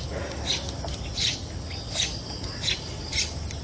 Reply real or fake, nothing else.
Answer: real